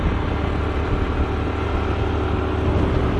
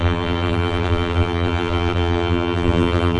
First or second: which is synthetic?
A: second